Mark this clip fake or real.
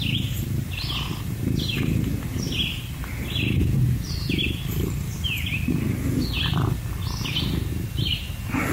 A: real